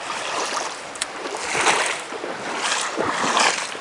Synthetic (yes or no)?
no